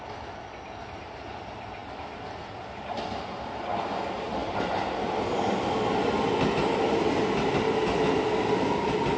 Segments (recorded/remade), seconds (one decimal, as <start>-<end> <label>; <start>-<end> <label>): 0.0-9.2 recorded